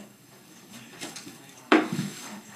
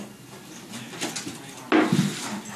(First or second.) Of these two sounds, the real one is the second